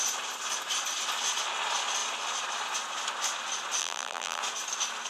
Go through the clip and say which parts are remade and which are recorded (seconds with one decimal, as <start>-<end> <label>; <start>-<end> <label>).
0.0-3.8 recorded; 3.8-4.4 remade; 4.4-5.1 recorded